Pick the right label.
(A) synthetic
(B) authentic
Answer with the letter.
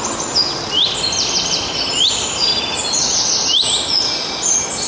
B